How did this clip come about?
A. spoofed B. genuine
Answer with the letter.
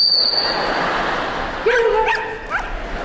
B